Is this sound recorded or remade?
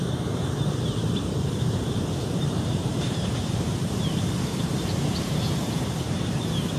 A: remade